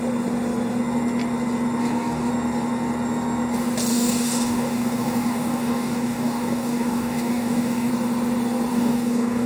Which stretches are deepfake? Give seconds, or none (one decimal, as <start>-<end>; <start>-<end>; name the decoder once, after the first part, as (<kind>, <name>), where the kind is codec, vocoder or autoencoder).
1.8-2.3 (codec, DAC); 3.9-7.9; 8.7-9.5